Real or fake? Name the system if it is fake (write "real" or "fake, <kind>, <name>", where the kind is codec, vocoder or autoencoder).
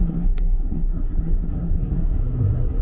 fake, codec, SNAC